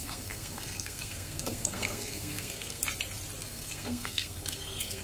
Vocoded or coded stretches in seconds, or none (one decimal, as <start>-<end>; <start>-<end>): 0.0-2.8; 3.4-5.0